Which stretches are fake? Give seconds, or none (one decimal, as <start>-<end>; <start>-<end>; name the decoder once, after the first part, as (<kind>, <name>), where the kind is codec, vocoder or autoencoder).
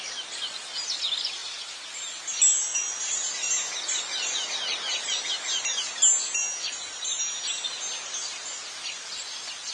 none